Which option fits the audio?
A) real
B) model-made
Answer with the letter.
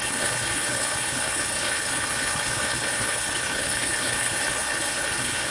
B